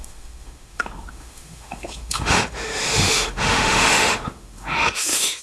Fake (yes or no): yes